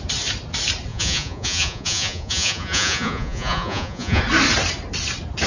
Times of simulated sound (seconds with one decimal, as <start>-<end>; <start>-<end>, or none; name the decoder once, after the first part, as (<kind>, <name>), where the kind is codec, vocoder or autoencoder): 0.9-4.2 (vocoder, Vocos)